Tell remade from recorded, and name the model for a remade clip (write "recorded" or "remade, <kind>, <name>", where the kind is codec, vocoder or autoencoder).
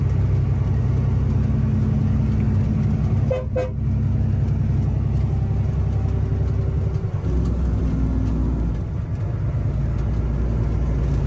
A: recorded